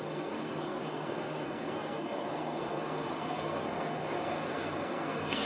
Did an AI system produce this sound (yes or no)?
yes